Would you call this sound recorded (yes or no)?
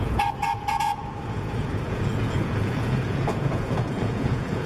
no